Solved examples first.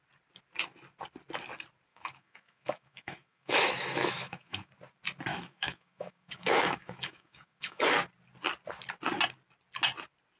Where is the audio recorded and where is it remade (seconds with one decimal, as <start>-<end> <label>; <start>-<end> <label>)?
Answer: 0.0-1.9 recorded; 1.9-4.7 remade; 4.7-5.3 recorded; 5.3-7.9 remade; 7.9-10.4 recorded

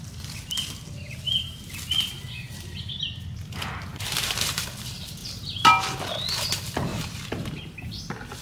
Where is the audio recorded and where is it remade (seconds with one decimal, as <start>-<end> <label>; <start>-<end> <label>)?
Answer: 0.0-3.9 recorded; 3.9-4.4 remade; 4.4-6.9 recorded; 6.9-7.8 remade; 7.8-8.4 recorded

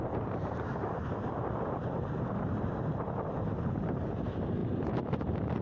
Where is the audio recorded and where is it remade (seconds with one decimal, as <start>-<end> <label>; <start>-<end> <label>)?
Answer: 0.0-1.1 remade; 1.1-3.3 recorded; 3.3-5.6 remade

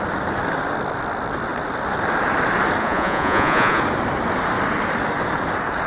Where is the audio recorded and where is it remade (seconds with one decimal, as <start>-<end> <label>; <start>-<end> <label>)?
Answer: 0.0-2.8 recorded; 2.8-3.8 remade; 3.8-5.9 recorded

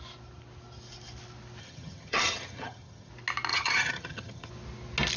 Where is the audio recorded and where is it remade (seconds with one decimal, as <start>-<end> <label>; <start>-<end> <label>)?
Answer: 0.0-1.6 recorded; 1.6-3.1 remade; 3.1-3.5 recorded; 3.5-4.5 remade; 4.5-5.2 recorded

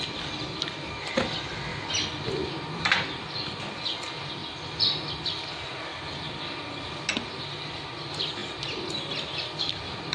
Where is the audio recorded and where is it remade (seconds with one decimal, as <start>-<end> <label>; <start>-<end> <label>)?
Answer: 0.0-10.1 recorded

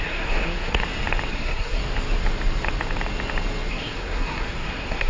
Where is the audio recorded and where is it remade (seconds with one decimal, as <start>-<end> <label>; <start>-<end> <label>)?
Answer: 0.0-0.8 remade; 0.8-1.3 recorded; 1.3-1.8 remade; 1.8-3.7 recorded; 3.7-5.1 remade

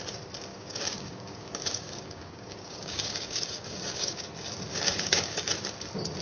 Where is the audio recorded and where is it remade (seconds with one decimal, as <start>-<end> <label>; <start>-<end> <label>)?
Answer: 0.0-0.5 recorded; 0.5-4.2 remade; 4.2-4.7 recorded; 4.7-5.5 remade; 5.5-6.2 recorded